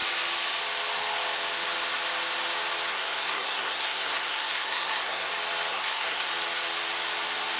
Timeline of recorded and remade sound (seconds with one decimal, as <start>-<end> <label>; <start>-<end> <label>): 0.0-2.9 recorded; 2.9-5.3 remade; 5.3-5.7 recorded; 5.7-6.3 remade; 6.3-7.6 recorded